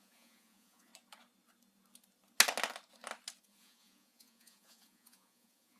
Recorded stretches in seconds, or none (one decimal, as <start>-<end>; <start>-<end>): 0.9-3.4